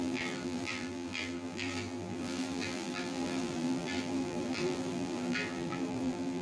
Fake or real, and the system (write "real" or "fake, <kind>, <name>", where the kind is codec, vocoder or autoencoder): fake, vocoder, BigVGAN v2